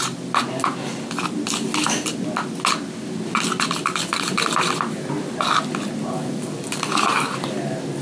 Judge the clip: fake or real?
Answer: real